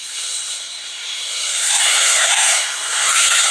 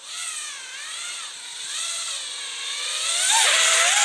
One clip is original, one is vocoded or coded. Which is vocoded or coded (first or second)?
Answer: first